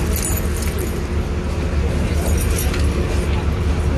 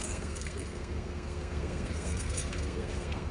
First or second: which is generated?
second